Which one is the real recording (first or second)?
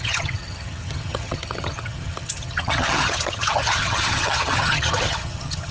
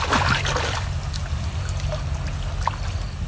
second